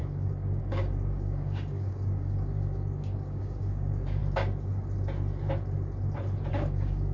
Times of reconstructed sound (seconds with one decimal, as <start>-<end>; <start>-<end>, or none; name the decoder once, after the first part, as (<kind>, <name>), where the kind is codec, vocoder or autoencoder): 0.0-4.2 (codec, DAC); 6.5-7.1